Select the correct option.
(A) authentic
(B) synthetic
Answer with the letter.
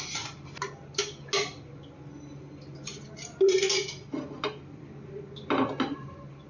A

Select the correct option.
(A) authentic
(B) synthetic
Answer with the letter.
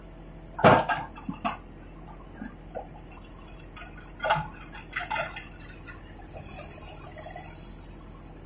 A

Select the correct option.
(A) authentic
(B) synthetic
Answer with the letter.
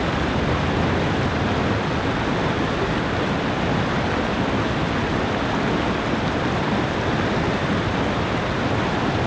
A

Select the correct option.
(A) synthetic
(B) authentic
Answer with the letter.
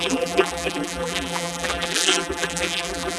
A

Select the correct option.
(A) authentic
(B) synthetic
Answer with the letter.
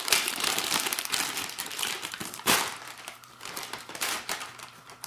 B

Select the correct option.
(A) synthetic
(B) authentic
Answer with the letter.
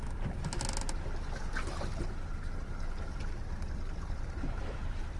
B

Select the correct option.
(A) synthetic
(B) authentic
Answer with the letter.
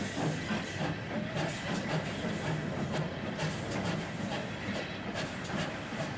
B